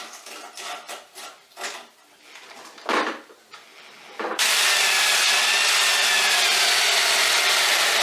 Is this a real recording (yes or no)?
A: yes